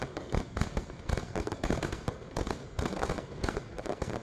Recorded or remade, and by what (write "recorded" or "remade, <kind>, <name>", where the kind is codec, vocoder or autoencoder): remade, codec, SNAC